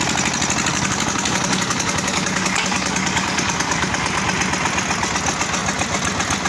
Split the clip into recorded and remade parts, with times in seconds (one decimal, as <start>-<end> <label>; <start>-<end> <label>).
0.0-0.7 recorded; 0.7-4.2 remade; 4.2-6.5 recorded